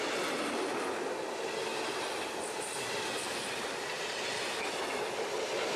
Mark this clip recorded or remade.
recorded